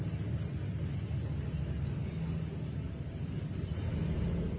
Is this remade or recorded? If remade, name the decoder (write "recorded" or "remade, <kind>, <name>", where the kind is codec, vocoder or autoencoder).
recorded